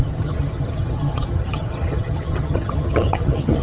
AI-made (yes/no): yes